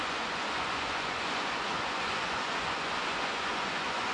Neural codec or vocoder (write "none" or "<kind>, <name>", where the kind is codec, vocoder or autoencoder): vocoder, Vocos